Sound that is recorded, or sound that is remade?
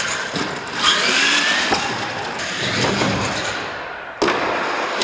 recorded